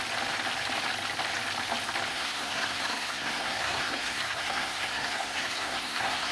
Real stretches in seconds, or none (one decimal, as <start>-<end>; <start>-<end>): 0.0-2.1